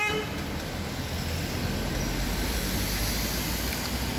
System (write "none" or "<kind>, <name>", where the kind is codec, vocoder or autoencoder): none